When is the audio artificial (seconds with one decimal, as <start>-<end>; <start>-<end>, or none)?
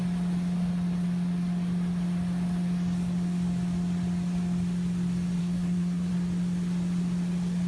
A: 5.4-6.1